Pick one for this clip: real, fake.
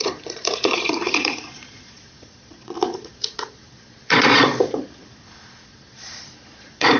fake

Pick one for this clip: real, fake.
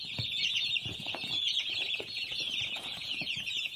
fake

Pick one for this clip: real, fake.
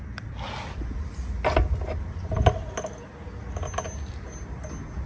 real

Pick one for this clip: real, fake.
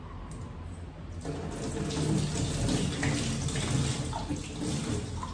real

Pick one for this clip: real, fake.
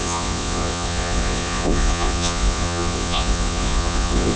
fake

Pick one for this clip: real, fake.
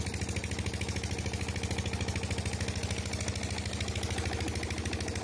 real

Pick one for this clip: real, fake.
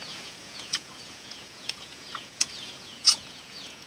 fake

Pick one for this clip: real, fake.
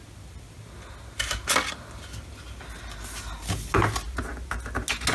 real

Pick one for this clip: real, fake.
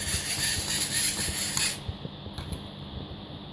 real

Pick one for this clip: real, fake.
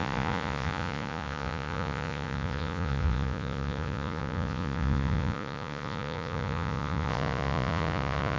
fake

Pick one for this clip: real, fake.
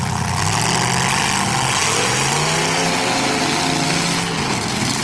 real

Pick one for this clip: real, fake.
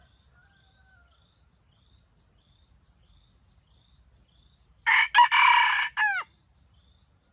real